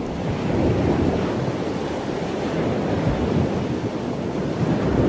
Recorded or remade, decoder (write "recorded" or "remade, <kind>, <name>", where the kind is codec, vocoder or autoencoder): recorded